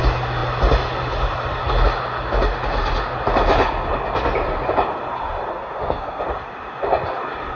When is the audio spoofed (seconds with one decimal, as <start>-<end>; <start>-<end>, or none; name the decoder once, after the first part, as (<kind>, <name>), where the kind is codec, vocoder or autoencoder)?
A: 5.5-6.2 (codec, SNAC)